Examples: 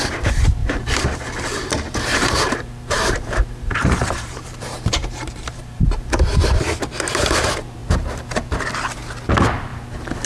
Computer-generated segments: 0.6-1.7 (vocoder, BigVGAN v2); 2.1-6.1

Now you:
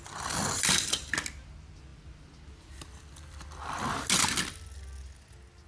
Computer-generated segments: none